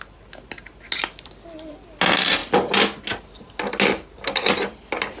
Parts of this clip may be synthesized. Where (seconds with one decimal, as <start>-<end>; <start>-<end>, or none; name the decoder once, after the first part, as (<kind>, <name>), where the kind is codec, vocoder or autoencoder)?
none